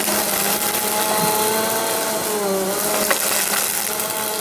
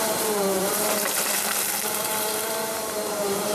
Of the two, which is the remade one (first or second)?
second